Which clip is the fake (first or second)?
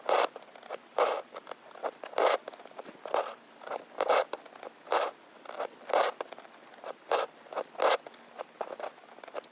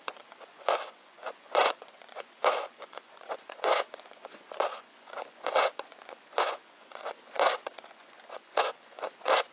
second